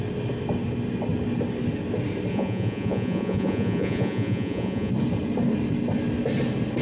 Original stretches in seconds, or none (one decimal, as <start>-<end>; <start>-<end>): 0.0-2.3; 4.9-6.8